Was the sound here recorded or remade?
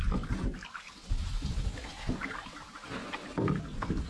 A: recorded